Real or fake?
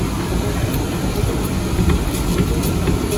real